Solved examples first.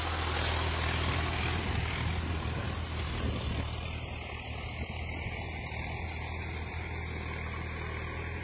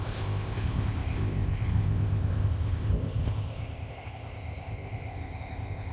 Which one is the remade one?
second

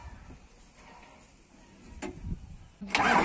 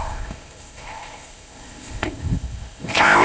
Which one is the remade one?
second